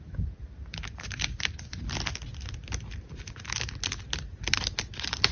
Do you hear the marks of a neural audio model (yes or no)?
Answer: no